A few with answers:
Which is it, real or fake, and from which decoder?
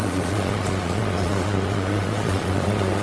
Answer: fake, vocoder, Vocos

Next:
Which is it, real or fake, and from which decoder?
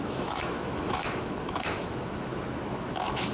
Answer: fake, autoencoder, DAC-VAE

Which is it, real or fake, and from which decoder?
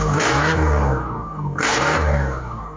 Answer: fake, codec, DAC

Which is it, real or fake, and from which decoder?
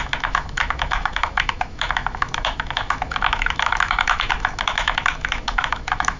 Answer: fake, autoencoder, DAC-VAE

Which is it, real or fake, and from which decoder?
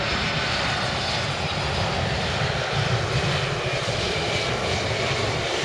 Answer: real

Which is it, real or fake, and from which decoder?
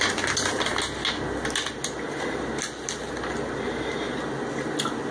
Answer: real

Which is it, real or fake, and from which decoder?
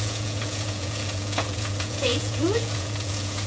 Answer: fake, vocoder, Vocos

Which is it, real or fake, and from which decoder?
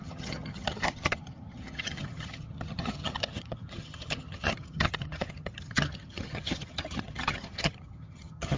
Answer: fake, vocoder, HiFi-GAN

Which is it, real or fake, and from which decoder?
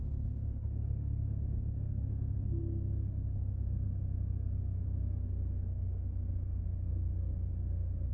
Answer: fake, codec, SNAC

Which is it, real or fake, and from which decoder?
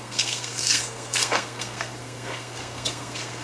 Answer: fake, codec, SNAC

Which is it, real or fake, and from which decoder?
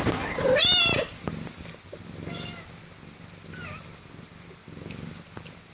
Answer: fake, vocoder, BigVGAN v2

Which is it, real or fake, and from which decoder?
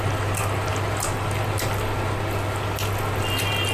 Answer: real